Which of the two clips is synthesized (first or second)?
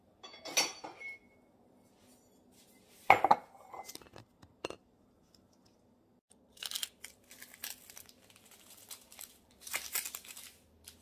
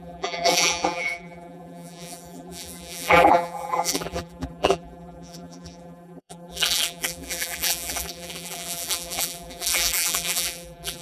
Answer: second